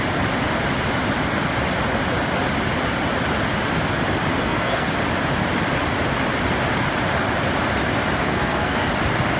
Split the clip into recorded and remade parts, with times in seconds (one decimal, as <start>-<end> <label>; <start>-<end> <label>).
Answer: 0.0-4.3 recorded; 4.3-4.9 remade; 4.9-8.2 recorded; 8.2-8.9 remade; 8.9-9.4 recorded